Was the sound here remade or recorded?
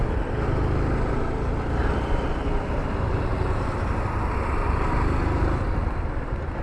recorded